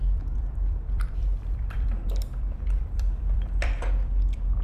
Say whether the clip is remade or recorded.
remade